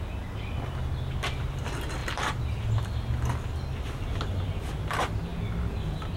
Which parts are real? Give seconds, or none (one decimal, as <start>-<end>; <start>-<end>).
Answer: 0.0-6.2